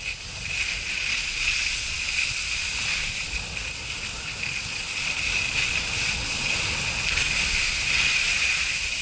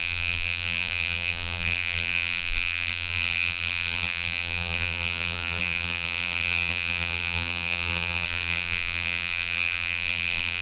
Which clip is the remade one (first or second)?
second